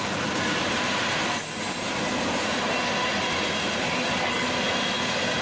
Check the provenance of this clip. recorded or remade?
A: recorded